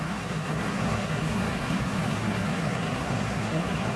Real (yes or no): no